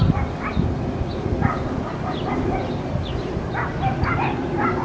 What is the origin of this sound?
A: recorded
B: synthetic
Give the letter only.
A